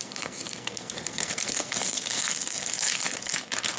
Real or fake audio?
fake